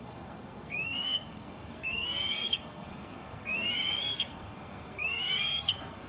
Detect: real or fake fake